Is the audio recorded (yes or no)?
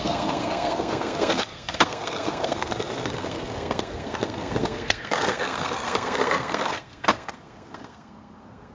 no